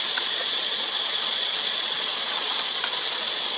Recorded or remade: remade